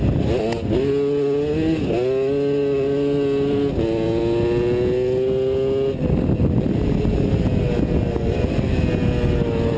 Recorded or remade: recorded